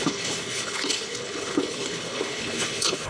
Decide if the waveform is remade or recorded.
remade